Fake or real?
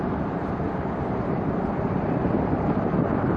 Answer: fake